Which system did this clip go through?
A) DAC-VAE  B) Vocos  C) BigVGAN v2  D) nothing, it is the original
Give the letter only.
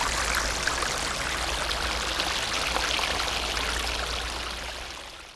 D